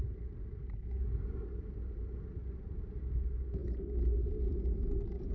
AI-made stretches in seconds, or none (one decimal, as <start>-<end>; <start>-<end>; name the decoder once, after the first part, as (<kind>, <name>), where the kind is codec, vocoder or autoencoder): none